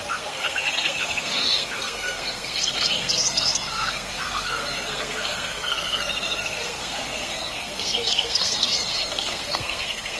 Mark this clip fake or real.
fake